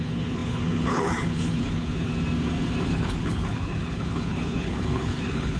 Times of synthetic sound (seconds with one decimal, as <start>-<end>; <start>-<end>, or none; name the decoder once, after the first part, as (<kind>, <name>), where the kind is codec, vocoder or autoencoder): 0.0-2.1 (codec, HILCodec); 2.9-5.6